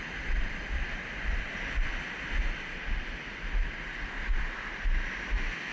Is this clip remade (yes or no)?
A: no